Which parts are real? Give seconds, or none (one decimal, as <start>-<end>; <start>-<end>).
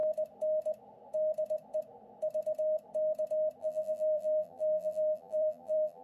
0.0-3.6